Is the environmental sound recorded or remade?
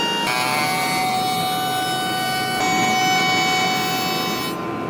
recorded